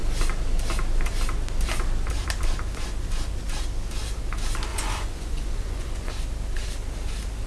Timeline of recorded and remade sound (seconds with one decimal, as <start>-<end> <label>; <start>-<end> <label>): 0.0-4.7 recorded; 4.7-6.1 remade; 6.1-7.5 recorded